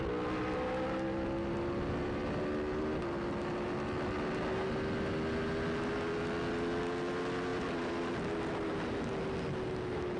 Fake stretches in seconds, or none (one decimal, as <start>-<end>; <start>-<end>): none